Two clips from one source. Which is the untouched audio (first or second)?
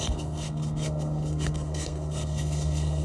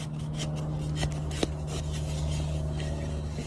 second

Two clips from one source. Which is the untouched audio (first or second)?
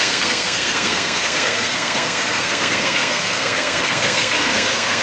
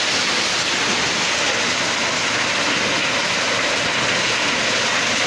second